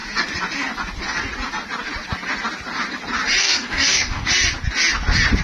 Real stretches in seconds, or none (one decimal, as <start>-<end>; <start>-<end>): 0.0-3.4; 4.3-5.4